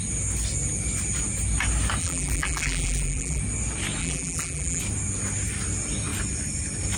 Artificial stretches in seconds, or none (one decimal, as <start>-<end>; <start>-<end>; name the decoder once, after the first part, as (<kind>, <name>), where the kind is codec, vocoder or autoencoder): 2.0-3.4 (vocoder, BigVGAN v2); 4.0-4.8